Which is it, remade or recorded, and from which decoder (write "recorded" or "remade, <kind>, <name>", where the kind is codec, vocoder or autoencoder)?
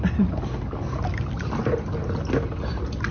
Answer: recorded